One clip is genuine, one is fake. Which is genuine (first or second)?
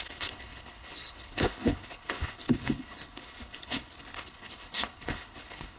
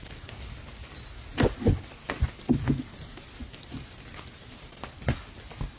second